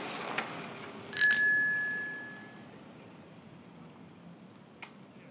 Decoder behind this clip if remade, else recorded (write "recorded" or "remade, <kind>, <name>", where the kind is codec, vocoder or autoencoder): recorded